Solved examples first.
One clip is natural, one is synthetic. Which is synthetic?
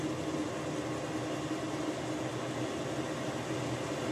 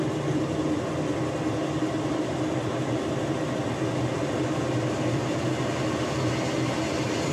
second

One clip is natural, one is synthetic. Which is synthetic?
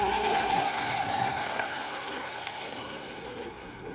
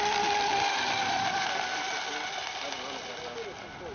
first